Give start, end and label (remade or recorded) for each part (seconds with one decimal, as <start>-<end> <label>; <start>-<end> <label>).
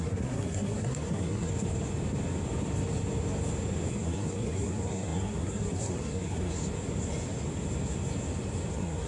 0.0-1.5 remade; 1.5-3.9 recorded; 3.9-6.6 remade; 6.6-8.7 recorded; 8.7-9.1 remade